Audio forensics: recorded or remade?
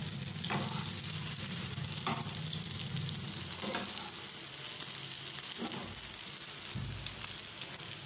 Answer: recorded